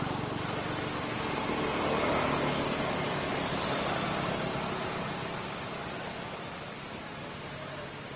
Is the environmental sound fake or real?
real